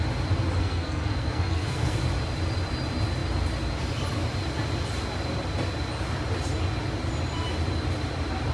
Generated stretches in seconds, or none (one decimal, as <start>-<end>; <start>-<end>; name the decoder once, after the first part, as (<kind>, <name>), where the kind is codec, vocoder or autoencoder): 0.6-2.0 (codec, SNAC)